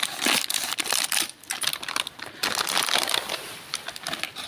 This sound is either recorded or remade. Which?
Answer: recorded